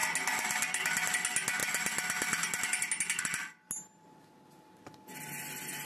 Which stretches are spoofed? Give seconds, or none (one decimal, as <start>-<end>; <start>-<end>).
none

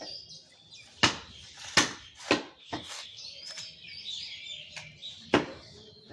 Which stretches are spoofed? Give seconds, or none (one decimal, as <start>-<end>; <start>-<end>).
2.6-3.2

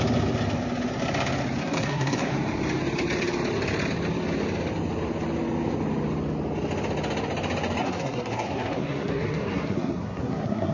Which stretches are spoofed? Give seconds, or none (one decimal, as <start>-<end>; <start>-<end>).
1.6-2.3; 7.8-10.7

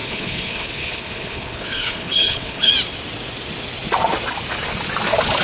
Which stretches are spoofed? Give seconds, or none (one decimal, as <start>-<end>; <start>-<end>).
0.0-2.7